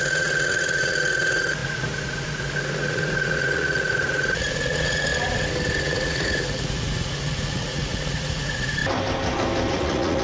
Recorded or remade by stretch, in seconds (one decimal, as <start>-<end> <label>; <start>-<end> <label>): 0.0-5.1 remade; 5.1-5.8 recorded; 5.8-8.8 remade; 8.8-9.7 recorded; 9.7-10.2 remade